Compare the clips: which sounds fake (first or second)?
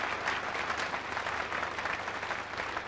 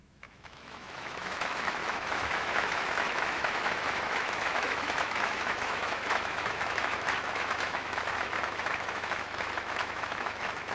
second